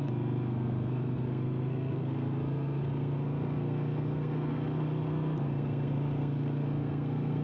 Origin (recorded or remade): remade